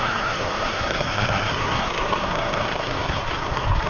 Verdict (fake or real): fake